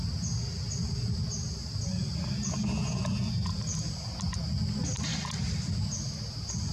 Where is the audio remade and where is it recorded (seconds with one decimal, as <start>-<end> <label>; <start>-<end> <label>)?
0.0-6.7 recorded